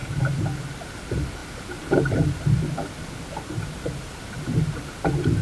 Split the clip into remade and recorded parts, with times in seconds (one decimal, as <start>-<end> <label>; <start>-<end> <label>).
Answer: 0.0-5.4 recorded

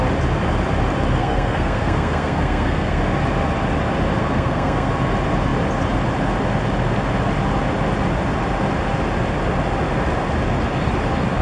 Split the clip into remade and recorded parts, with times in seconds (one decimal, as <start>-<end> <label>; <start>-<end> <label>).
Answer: 0.0-1.1 recorded; 1.1-3.0 remade; 3.0-4.2 recorded; 4.2-4.9 remade; 4.9-11.4 recorded